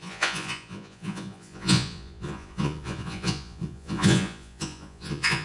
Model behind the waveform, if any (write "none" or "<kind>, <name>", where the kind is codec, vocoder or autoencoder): vocoder, Vocos